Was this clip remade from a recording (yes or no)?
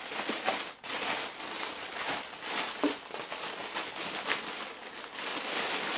no